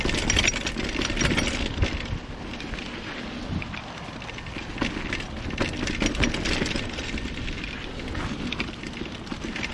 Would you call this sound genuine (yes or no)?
yes